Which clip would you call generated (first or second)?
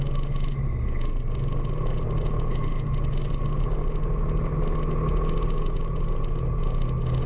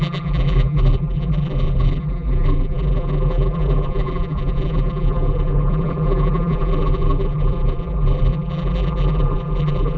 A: second